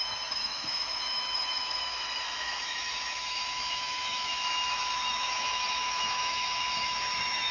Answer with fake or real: fake